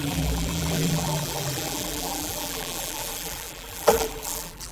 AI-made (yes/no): yes